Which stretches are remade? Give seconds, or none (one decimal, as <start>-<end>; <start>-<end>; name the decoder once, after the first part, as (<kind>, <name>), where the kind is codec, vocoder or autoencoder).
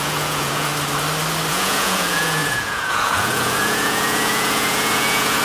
0.0-0.7 (vocoder, Vocos); 1.5-5.4